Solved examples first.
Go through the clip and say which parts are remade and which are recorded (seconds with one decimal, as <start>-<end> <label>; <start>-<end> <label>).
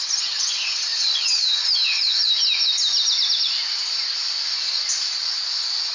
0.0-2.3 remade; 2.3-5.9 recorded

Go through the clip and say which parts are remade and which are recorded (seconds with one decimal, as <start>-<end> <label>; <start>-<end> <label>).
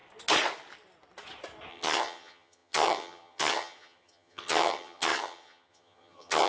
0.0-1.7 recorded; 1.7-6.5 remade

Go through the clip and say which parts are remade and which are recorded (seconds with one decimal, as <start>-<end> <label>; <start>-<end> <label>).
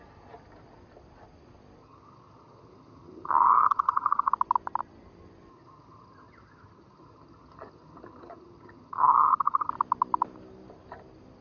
0.0-1.8 recorded; 1.8-4.3 remade; 4.3-5.5 recorded; 5.5-9.7 remade; 9.7-11.4 recorded